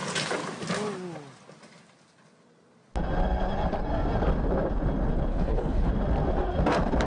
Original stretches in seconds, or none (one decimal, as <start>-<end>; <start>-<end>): 0.0-5.3; 5.9-7.1